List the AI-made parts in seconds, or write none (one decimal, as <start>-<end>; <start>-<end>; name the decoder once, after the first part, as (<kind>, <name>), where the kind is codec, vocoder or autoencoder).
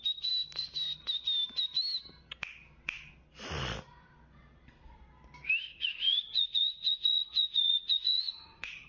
5.7-8.9 (vocoder, Vocos)